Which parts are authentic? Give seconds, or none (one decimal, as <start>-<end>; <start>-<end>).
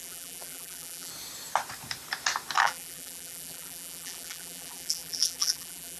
1.1-2.6